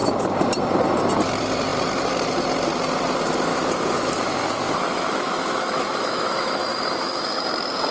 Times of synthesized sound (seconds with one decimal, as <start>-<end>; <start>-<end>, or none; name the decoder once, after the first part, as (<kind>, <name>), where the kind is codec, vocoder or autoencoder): 3.5-7.4 (autoencoder, DAC-VAE)